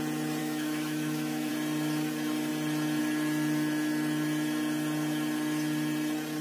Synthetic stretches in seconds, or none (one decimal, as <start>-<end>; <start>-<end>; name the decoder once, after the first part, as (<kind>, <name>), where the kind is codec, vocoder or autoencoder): 0.4-1.5 (autoencoder, DAC-VAE)